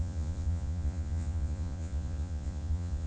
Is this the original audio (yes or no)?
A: no